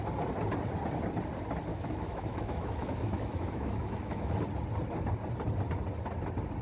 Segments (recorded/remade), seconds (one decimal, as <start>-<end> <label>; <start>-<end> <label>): 0.0-1.7 recorded; 1.7-4.3 remade; 4.3-6.6 recorded